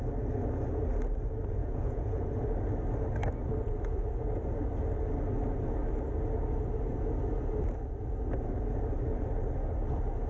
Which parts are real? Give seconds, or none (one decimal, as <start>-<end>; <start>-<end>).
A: 0.0-1.6; 2.2-10.3